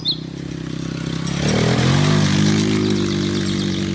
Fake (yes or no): no